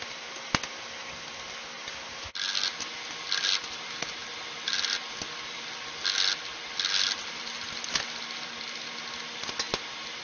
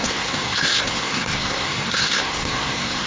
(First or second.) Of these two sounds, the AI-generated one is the second